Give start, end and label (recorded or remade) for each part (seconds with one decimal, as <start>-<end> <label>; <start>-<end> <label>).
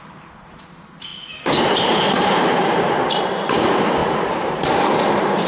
0.0-1.1 remade; 1.1-1.7 recorded; 1.7-5.5 remade